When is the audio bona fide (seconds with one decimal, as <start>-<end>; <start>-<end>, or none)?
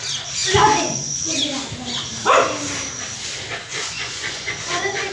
0.0-0.4; 1.2-3.7